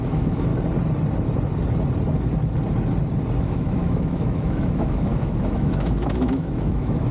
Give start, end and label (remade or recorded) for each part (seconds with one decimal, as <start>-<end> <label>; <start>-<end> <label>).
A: 0.0-0.5 remade; 0.5-3.4 recorded; 3.4-7.1 remade